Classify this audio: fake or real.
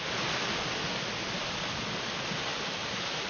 real